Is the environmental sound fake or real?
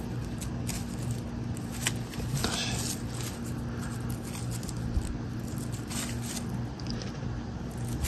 real